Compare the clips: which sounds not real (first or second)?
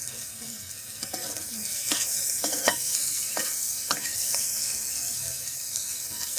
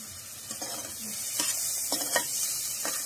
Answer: first